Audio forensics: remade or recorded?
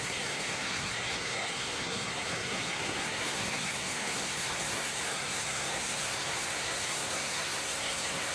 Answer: remade